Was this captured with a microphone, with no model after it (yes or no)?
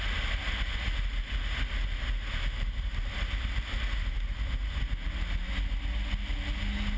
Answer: yes